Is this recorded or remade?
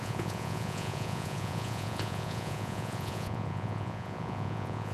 remade